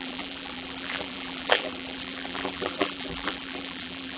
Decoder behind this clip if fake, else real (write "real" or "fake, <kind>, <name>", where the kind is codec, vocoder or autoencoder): fake, vocoder, BigVGAN v2